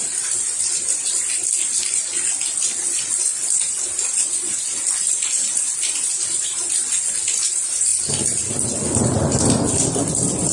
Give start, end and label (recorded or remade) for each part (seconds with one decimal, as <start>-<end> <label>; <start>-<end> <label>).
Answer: 0.0-10.5 recorded